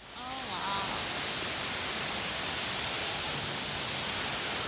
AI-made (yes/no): no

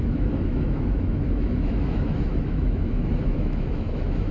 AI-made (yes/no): yes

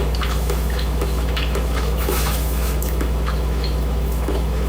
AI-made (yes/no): yes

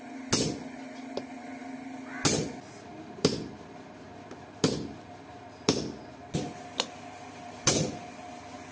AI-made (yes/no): no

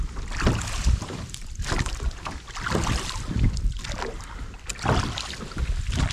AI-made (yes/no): no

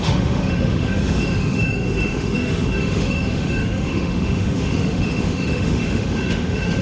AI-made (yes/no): yes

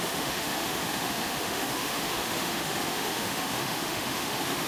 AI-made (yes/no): yes